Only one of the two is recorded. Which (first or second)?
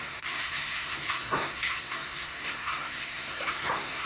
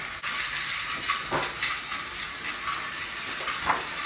second